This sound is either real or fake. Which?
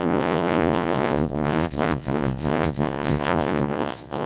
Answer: fake